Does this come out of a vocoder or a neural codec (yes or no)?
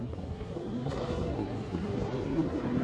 yes